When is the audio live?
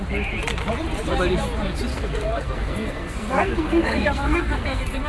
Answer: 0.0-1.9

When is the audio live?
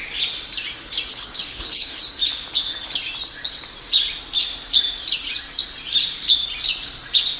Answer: 0.0-1.1; 2.0-7.4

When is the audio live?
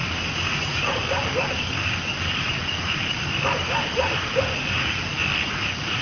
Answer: 0.0-0.5; 1.0-2.6; 3.0-4.0; 5.0-5.5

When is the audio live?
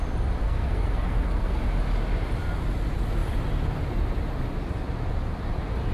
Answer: 0.0-0.4; 1.6-5.9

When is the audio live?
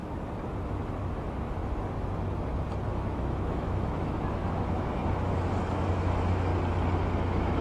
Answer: 0.0-0.5; 1.6-2.9; 6.5-7.0